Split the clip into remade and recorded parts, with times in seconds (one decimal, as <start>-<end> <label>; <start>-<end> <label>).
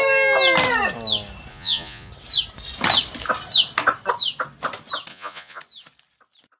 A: 0.0-1.5 recorded; 1.5-2.1 remade; 2.1-5.1 recorded; 5.1-5.6 remade; 5.6-6.6 recorded